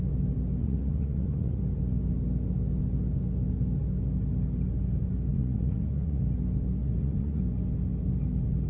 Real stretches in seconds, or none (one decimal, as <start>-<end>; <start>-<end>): 0.0-0.6; 1.6-5.3; 6.2-6.8; 7.4-8.7